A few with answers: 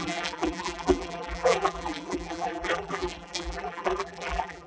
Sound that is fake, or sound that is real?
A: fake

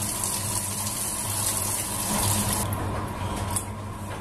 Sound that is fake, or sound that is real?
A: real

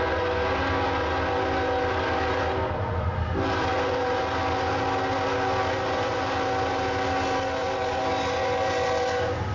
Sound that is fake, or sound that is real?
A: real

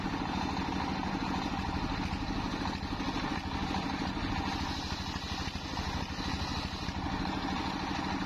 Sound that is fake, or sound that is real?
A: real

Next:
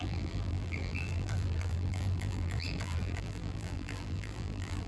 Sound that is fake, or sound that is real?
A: fake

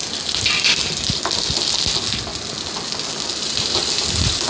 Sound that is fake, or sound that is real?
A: real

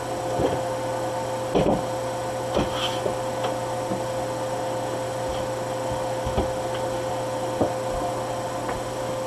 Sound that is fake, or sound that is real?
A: real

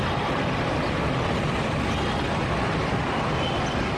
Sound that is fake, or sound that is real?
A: real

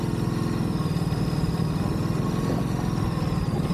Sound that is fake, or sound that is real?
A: real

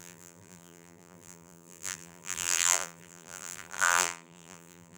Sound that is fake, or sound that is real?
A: fake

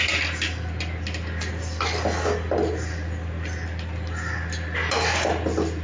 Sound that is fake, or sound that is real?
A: real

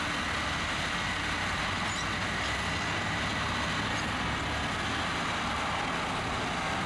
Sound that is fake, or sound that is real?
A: real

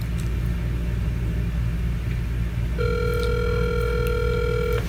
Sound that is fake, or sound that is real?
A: real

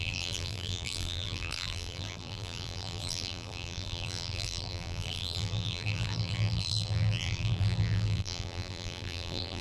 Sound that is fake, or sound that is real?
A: fake